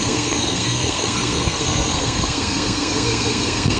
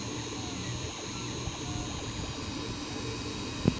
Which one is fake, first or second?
first